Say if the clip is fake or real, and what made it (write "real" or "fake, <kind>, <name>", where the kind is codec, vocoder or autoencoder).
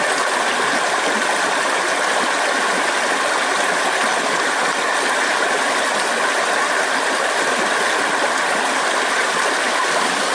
real